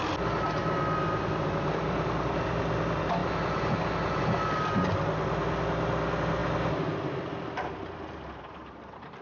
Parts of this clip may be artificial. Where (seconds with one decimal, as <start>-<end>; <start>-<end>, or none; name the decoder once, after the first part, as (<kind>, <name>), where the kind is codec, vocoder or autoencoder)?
0.6-2.6 (vocoder, BigVGAN v2); 3.2-4.2